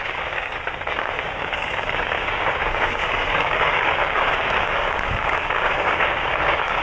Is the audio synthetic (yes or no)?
yes